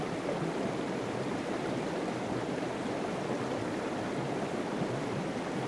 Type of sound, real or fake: real